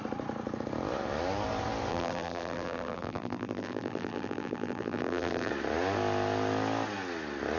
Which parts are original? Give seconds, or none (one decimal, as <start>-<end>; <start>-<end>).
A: 0.0-1.9; 5.5-7.6